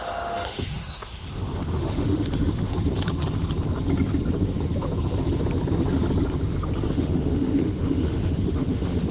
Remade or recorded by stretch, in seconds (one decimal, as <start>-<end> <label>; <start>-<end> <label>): 0.0-2.7 remade; 2.7-6.9 recorded; 6.9-9.1 remade